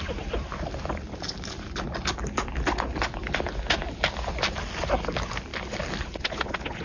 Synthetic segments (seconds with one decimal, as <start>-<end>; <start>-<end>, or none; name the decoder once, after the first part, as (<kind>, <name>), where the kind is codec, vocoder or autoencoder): none